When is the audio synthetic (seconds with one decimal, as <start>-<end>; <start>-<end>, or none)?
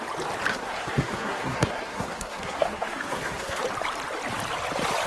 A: 0.5-3.6